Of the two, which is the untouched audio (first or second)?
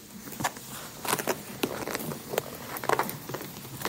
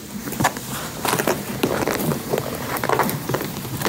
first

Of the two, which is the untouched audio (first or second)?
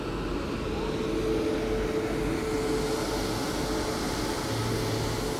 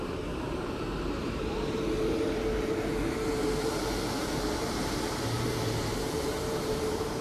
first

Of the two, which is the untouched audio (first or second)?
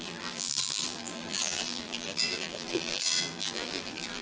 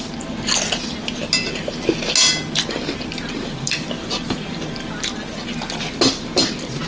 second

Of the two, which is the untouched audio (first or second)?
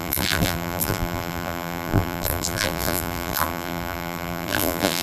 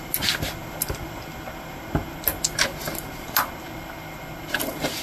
second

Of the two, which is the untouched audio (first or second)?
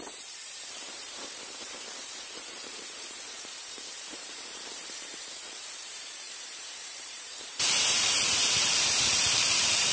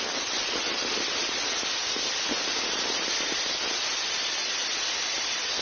second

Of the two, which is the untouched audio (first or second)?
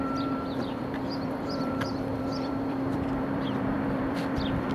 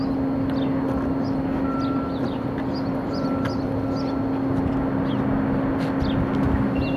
second